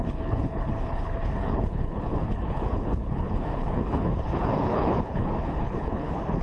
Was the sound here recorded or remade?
remade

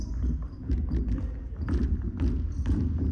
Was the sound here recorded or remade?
recorded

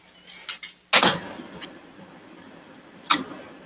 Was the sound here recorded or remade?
recorded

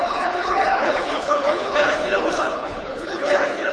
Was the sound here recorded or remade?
remade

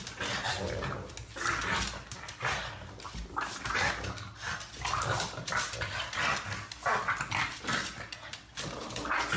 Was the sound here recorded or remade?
recorded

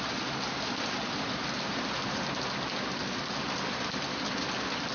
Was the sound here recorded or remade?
recorded